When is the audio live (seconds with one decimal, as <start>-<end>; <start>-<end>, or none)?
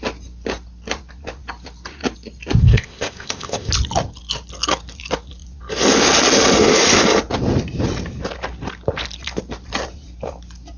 0.0-2.6; 3.7-10.8